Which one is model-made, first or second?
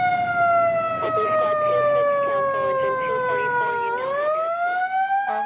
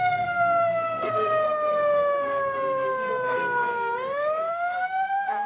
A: second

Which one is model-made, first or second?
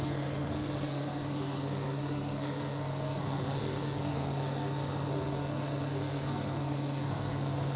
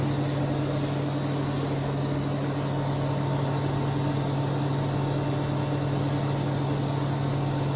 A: first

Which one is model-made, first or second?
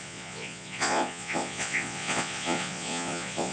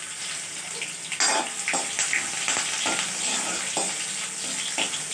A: first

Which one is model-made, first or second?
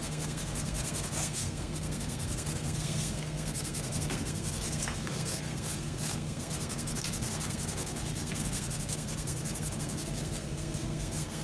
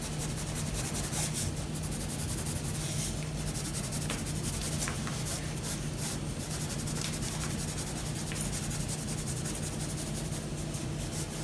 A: first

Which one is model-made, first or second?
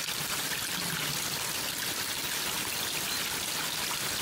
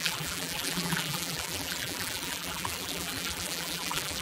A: second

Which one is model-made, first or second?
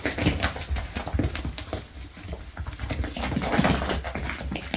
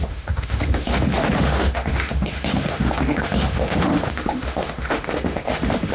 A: second